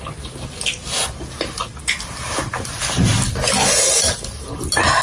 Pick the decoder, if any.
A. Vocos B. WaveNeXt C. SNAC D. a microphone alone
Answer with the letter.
D